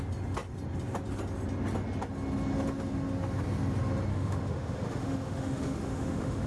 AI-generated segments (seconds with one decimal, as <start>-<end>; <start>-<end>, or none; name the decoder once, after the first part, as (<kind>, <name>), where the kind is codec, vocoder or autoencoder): 4.1-6.5 (autoencoder, DAC-VAE)